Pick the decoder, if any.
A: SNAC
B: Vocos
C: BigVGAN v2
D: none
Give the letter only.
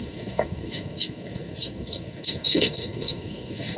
A